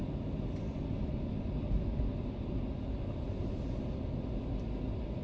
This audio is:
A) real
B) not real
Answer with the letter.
A